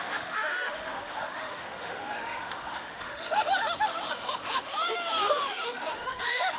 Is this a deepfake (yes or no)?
yes